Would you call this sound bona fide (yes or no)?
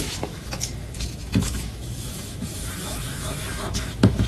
no